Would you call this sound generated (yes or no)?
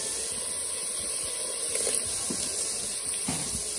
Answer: no